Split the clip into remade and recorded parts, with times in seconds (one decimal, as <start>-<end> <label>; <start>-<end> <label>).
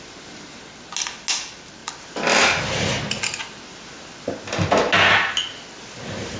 0.0-6.4 recorded